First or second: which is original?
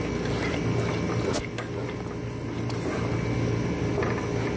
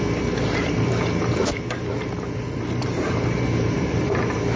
first